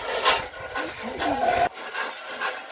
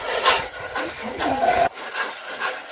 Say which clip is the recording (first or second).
first